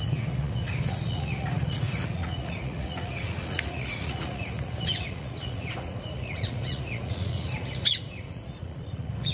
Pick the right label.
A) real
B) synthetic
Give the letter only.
B